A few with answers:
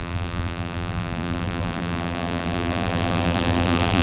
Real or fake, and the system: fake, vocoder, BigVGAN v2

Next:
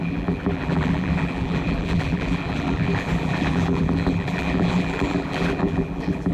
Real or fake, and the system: fake, vocoder, BigVGAN v2